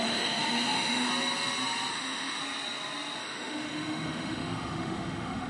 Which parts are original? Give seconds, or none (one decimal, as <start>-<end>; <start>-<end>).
1.1-1.9; 2.4-3.2